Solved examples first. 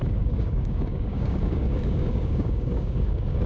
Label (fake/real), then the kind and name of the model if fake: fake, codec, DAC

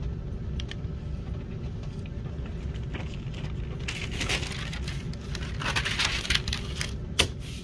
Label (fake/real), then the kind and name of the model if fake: real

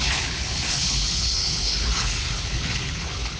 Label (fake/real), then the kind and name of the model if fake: fake, codec, HILCodec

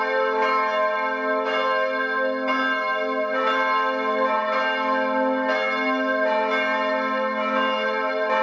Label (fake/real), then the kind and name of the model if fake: real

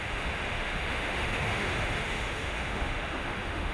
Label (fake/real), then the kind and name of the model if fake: fake, autoencoder, DAC-VAE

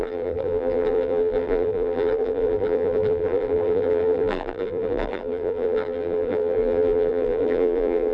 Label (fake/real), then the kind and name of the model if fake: fake, vocoder, BigVGAN v2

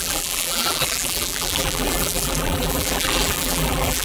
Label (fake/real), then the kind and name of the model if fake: fake, vocoder, BigVGAN v2